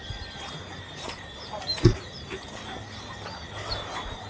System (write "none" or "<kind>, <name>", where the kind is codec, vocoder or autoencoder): none